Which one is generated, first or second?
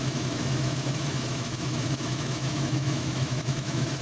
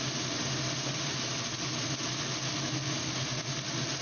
first